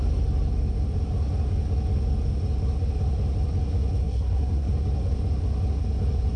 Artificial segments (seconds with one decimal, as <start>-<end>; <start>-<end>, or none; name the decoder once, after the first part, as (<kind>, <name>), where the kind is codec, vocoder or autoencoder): 4.0-4.7 (codec, SNAC)